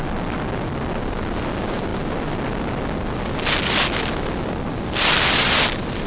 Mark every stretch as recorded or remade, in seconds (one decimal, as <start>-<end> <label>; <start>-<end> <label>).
0.0-6.1 recorded